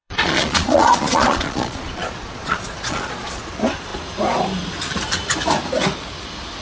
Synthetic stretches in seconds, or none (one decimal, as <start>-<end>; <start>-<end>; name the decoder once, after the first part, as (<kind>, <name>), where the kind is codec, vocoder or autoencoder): 0.0-3.5 (vocoder, Vocos)

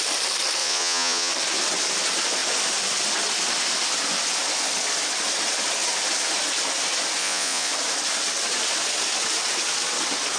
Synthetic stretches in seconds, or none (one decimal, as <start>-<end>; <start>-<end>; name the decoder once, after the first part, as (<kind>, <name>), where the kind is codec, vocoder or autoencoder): 0.6-1.3 (vocoder, Vocos); 7.2-7.7

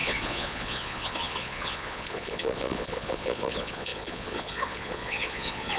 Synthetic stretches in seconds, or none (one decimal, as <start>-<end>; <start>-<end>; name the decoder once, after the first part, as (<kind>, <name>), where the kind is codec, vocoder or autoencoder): 0.0-5.8 (vocoder, Vocos)